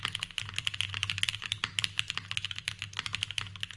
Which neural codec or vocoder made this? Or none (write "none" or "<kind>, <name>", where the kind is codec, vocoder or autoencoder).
none